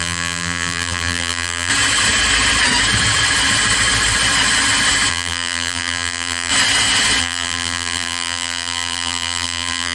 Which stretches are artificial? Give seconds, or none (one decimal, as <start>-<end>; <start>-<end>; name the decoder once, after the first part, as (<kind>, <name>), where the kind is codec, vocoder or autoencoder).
0.0-1.7 (vocoder, BigVGAN v2); 5.1-6.5; 7.2-9.9